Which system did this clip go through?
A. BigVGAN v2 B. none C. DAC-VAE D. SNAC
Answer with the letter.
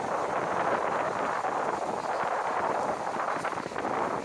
B